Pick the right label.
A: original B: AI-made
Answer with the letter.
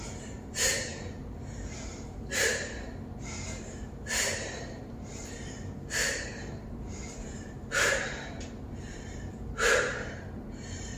B